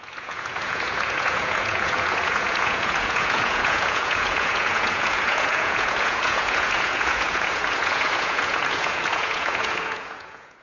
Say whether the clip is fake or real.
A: fake